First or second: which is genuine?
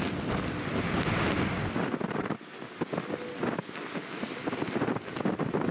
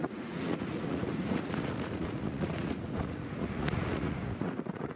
first